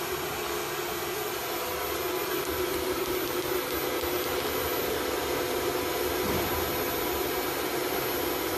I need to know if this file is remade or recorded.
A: recorded